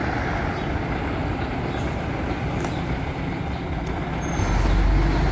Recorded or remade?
recorded